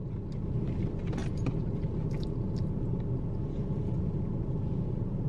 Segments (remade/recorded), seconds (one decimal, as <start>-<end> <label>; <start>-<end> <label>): 0.0-5.3 recorded